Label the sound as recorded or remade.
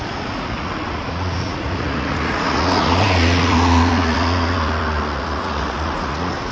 remade